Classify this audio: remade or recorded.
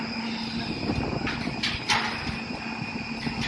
recorded